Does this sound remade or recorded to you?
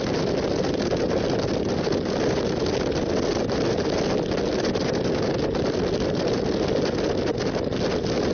recorded